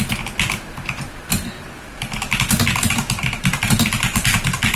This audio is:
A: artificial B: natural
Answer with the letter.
B